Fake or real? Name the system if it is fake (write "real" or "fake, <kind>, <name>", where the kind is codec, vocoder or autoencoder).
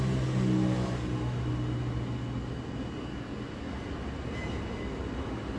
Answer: real